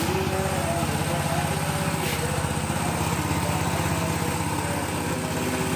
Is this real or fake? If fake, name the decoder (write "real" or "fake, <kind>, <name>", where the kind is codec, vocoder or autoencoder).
real